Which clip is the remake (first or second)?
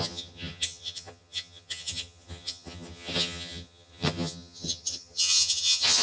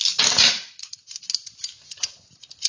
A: first